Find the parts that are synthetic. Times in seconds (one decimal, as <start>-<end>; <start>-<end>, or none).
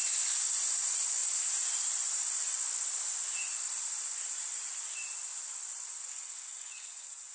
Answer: 6.0-7.3